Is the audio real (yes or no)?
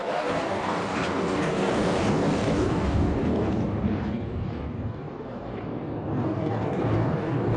no